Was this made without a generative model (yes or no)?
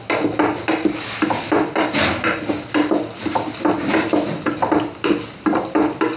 yes